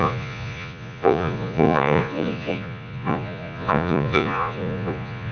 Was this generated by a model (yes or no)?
yes